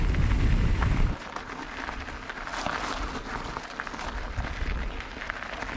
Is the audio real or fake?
real